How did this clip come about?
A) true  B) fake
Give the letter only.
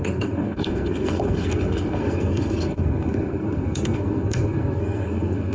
B